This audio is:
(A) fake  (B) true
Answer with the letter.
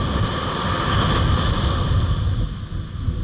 B